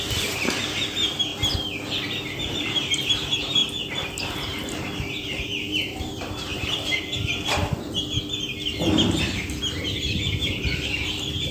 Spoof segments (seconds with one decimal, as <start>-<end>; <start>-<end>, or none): 0.0-1.3; 2.4-3.6; 4.2-7.6; 9.1-11.5